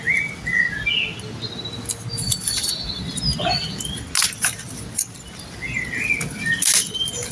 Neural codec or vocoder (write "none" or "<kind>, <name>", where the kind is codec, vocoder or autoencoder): none